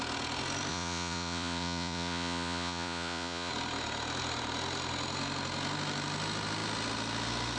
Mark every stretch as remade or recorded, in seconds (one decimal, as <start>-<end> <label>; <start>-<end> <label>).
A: 0.0-0.7 recorded; 0.7-3.5 remade; 3.5-7.6 recorded